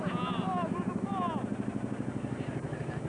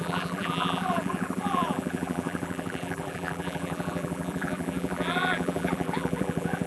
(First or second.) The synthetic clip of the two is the second